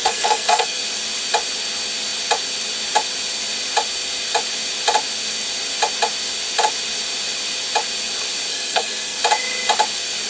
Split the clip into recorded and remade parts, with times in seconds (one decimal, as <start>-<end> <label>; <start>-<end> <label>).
0.0-0.8 remade; 0.8-8.5 recorded; 8.5-9.2 remade; 9.2-10.3 recorded